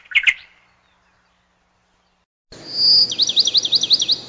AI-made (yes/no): no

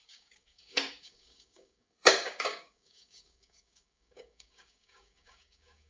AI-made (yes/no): yes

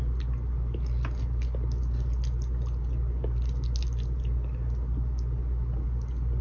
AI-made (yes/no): no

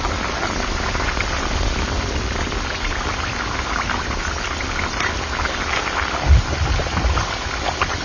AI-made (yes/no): no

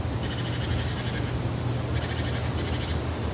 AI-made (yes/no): no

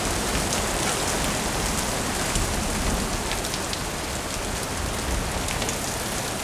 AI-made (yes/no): no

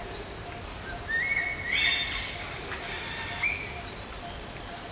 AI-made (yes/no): no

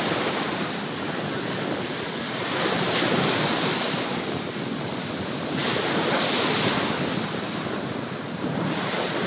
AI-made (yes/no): no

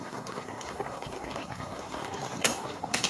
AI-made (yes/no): yes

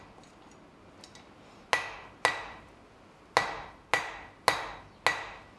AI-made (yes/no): no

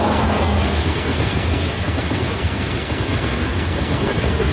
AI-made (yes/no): yes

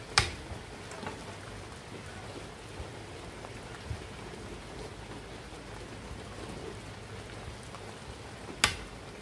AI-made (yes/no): no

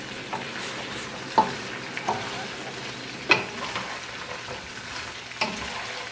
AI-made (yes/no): no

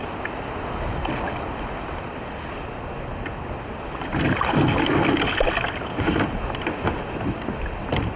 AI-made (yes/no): no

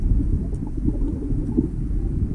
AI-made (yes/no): yes